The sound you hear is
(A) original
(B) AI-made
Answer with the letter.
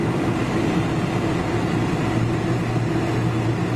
A